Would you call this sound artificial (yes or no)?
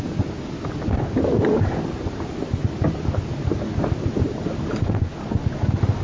no